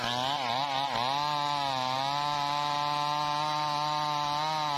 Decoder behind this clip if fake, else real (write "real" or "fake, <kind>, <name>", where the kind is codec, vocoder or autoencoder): real